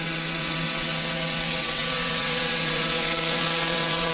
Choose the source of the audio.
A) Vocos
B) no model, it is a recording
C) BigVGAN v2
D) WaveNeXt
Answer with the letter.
D